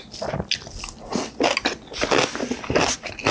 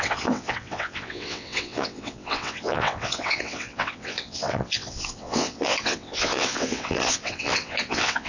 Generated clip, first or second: second